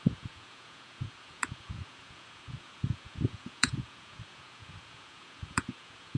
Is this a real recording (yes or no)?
no